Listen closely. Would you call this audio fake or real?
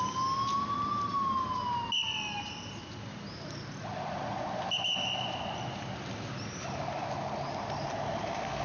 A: real